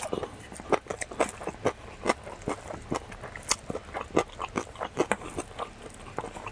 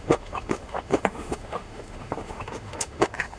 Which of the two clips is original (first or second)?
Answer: first